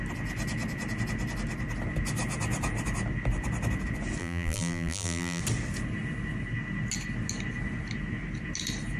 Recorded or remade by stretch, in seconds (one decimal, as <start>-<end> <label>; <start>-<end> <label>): 0.0-4.2 recorded; 4.2-5.4 remade; 5.4-9.0 recorded